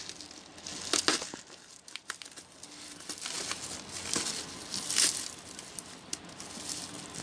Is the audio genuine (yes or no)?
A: yes